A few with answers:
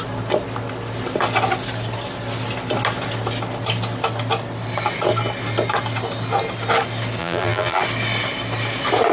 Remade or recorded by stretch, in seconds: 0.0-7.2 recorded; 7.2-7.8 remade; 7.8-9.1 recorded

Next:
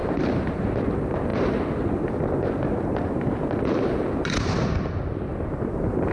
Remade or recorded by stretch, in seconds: 0.0-0.7 remade; 0.7-5.3 recorded; 5.3-6.1 remade

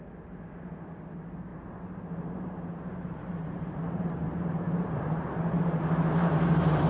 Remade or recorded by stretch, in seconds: 0.0-1.5 recorded; 1.5-5.6 remade; 5.6-6.9 recorded

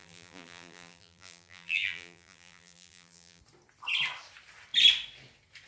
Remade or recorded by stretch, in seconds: 0.0-3.4 remade; 3.4-5.7 recorded

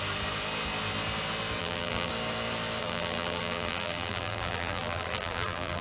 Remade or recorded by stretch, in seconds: 0.0-1.6 recorded; 1.6-2.1 remade; 2.1-2.8 recorded; 2.8-5.8 remade

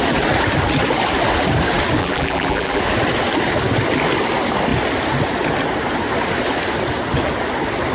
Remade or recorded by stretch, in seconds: 0.0-2.0 recorded; 2.0-2.8 remade; 2.8-7.9 recorded

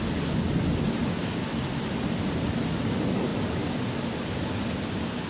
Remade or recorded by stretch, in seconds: 0.0-3.3 recorded; 3.3-4.3 remade; 4.3-5.3 recorded

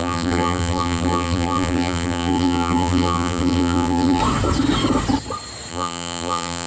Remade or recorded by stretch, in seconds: 0.0-4.2 remade; 4.2-5.7 recorded; 5.7-6.7 remade